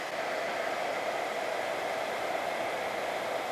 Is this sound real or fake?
real